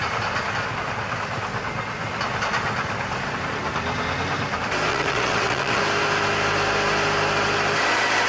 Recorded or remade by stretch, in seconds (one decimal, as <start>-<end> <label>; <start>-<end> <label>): 0.0-4.9 recorded; 4.9-5.8 remade; 5.8-8.3 recorded